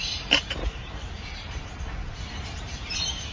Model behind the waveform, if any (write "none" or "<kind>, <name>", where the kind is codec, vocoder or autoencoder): vocoder, BigVGAN v2